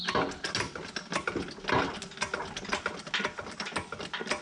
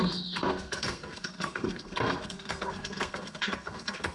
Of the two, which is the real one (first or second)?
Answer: first